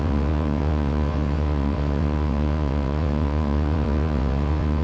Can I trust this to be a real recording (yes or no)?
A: no